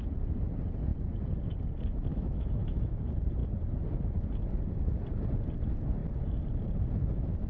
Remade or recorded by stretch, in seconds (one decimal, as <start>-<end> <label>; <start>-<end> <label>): 0.0-2.1 recorded; 2.1-3.0 remade; 3.0-7.5 recorded